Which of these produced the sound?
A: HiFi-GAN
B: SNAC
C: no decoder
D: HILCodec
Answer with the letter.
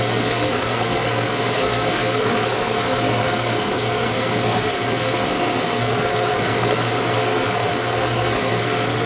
B